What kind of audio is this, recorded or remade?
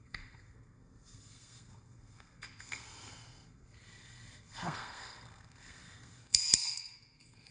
remade